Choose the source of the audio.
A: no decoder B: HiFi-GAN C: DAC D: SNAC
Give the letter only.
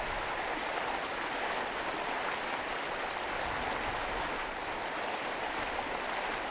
A